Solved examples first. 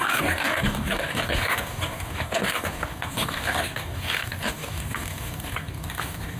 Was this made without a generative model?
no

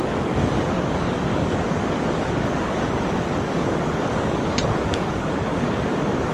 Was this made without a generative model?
no